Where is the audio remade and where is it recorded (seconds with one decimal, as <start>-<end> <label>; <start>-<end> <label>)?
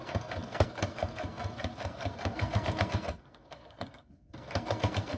0.0-5.2 remade